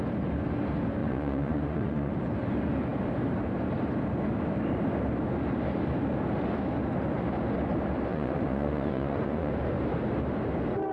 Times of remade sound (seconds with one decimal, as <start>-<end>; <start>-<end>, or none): 1.0-2.1; 8.1-9.5